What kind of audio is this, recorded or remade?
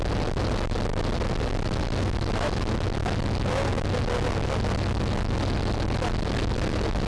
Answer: recorded